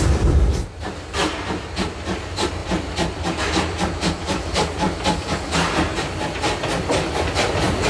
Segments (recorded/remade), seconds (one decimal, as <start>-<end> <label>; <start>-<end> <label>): 0.0-7.9 recorded